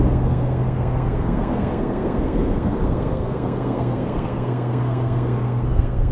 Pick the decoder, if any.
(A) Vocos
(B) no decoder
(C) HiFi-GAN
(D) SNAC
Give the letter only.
D